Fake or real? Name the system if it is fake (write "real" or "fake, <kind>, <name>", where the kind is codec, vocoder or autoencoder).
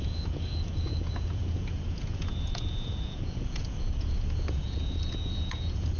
fake, vocoder, Vocos